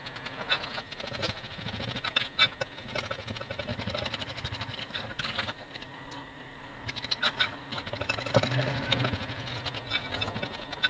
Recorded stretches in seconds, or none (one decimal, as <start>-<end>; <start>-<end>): 0.0-3.7; 8.9-10.9